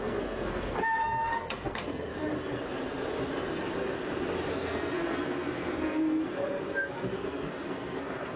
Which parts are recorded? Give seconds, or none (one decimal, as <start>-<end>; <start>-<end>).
2.1-4.5

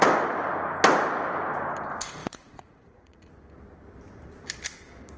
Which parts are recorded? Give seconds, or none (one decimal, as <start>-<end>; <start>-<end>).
0.0-2.2; 3.3-5.2

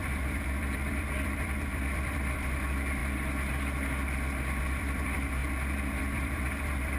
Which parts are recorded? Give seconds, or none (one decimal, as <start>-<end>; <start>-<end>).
3.0-4.6; 5.4-5.9

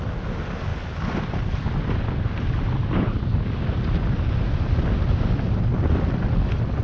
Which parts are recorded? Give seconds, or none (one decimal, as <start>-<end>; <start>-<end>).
0.0-6.8

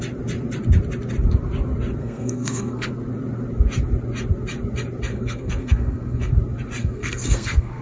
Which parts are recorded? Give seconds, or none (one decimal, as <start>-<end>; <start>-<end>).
0.0-2.0; 2.9-5.1; 6.3-6.8

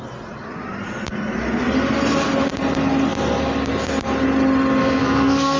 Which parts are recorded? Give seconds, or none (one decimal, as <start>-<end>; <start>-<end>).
0.0-4.8

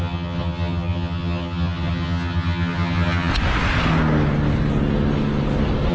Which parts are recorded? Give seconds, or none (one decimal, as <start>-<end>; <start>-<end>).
3.3-5.9